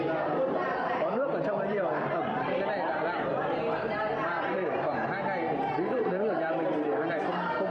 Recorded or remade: remade